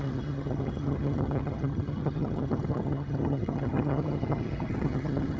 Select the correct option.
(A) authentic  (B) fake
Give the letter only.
B